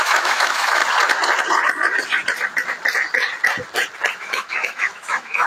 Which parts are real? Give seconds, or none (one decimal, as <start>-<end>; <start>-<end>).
0.8-4.1

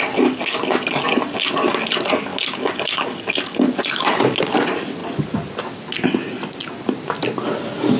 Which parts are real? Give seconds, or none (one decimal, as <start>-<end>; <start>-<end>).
0.0-8.0